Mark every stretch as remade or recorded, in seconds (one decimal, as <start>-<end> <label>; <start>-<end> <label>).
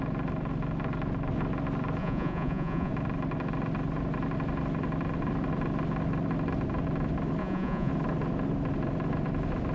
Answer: 0.0-2.0 recorded; 2.0-2.9 remade; 2.9-7.4 recorded; 7.4-7.9 remade; 7.9-9.7 recorded